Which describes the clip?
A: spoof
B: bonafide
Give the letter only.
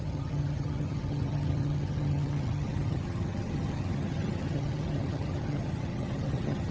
A